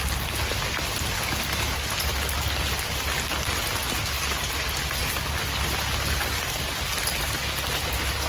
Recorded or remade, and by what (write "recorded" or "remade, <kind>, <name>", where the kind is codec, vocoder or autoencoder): recorded